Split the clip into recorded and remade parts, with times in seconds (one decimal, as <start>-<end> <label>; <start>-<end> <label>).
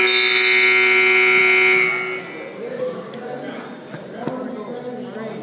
0.0-5.4 recorded